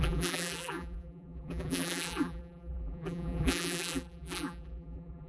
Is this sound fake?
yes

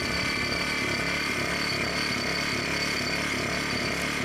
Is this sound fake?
no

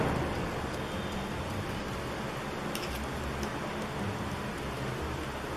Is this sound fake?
no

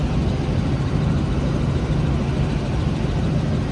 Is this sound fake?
no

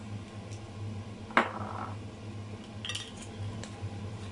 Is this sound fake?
no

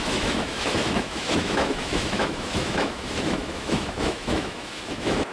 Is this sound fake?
yes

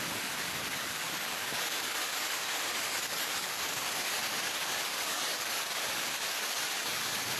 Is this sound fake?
yes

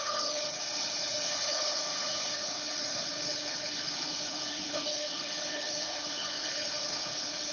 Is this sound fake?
yes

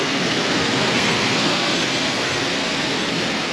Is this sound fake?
yes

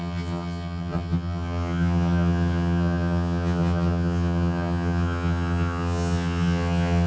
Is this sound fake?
yes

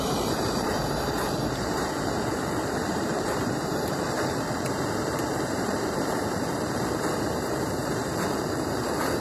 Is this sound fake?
yes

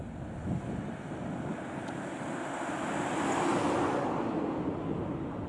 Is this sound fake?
no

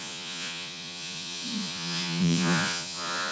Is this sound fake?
yes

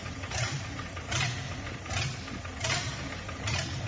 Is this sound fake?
no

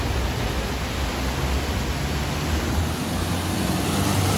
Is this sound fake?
no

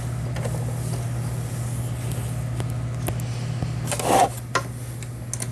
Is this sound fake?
no